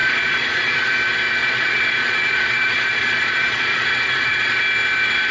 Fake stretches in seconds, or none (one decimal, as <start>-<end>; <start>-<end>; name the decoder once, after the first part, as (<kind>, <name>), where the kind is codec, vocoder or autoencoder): 0.0-0.9 (vocoder, Vocos); 1.4-4.6